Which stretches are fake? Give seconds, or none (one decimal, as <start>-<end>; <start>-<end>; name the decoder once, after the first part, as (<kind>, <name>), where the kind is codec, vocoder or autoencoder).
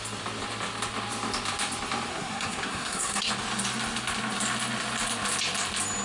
2.1-3.3 (codec, SNAC)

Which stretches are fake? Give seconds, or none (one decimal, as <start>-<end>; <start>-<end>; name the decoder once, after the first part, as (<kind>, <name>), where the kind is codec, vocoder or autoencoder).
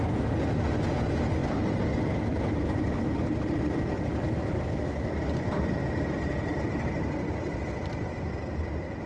none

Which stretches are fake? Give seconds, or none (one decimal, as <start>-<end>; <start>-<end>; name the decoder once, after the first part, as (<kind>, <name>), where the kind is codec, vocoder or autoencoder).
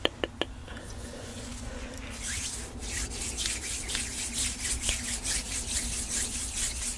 0.6-1.9 (vocoder, Vocos)